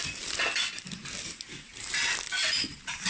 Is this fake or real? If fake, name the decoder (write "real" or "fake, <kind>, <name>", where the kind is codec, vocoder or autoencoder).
real